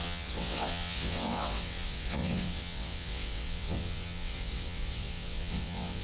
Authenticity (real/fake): fake